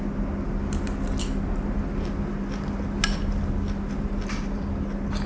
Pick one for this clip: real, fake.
real